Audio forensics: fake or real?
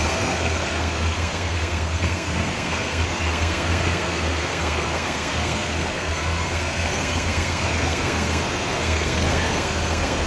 fake